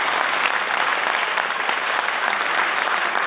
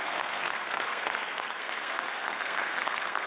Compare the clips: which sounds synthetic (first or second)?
second